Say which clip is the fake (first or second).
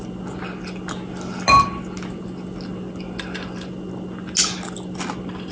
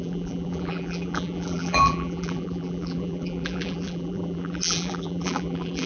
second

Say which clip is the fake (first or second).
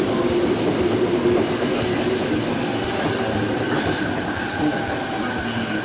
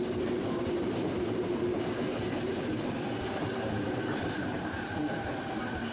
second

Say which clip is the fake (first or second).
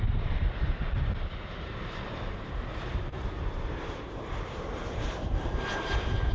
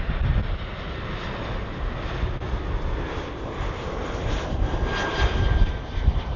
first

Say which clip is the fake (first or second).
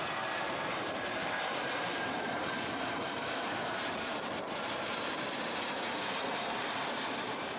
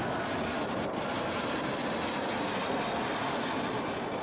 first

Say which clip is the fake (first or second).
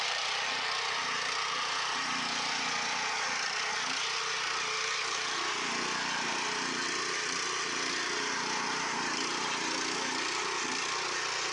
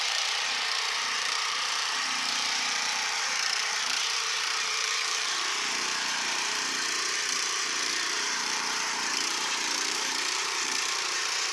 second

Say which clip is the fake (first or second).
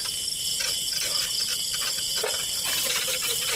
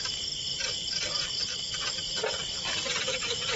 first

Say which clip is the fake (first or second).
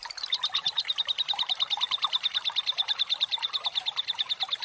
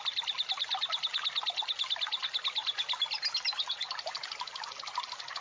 first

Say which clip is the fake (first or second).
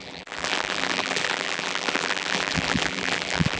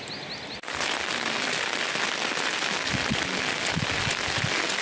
first